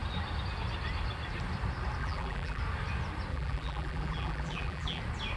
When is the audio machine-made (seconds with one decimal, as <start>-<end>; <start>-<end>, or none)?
2.0-2.6; 3.3-5.0